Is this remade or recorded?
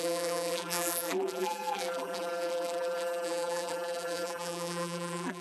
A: remade